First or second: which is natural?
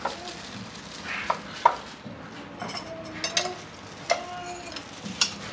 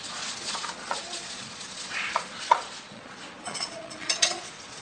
first